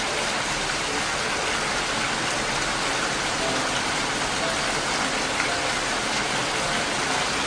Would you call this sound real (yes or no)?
yes